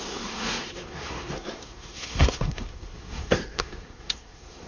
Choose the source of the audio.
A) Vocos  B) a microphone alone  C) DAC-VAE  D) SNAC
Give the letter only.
D